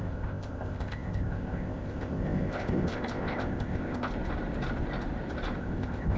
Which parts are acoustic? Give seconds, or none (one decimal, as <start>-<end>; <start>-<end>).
4.1-5.6